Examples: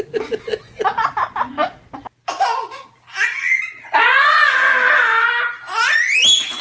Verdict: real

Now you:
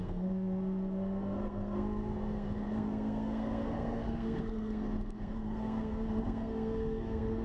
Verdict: fake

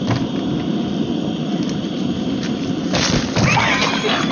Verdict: real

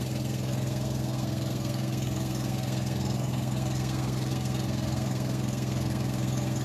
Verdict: fake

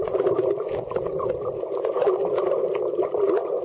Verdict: real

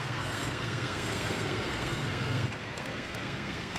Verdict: fake